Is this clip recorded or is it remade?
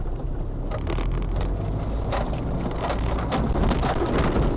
recorded